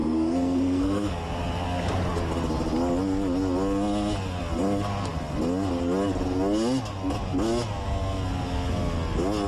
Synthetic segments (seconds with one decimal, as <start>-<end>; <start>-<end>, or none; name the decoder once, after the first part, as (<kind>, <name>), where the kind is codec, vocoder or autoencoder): 0.0-1.1 (codec, SNAC)